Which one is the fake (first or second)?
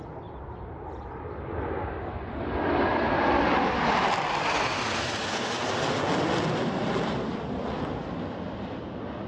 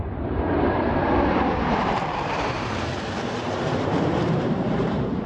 second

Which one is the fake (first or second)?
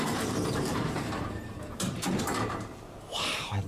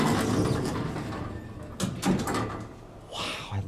first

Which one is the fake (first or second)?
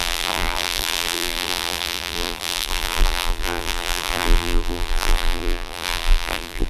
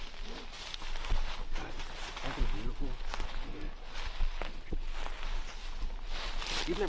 first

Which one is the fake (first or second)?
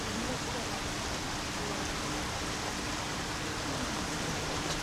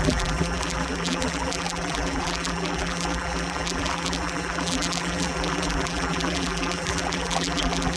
second